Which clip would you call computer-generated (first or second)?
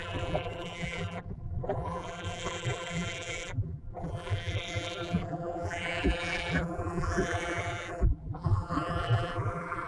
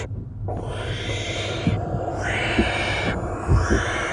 first